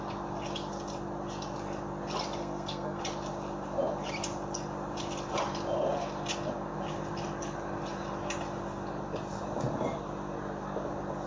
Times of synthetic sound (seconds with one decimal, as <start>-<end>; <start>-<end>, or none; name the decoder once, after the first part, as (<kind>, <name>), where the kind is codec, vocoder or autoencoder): 2.4-3.0 (codec, SNAC)